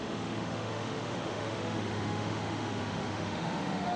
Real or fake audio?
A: fake